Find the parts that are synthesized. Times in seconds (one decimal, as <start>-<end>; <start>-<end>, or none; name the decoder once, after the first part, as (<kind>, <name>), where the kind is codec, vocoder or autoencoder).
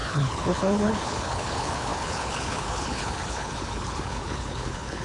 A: 0.0-5.0 (codec, HILCodec)